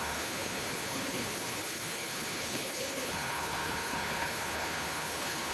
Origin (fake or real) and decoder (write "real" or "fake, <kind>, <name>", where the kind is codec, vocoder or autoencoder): fake, codec, HILCodec